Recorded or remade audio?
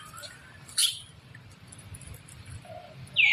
remade